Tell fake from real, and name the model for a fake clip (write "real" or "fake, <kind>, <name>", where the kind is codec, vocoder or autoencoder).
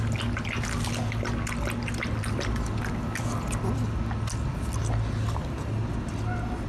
real